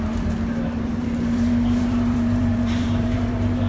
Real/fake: fake